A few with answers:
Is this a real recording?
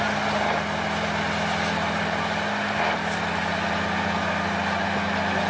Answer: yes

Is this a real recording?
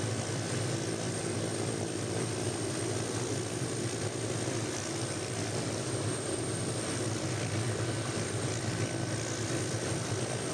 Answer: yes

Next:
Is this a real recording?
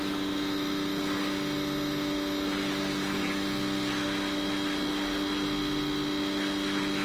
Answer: yes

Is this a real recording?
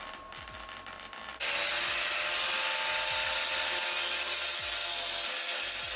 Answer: yes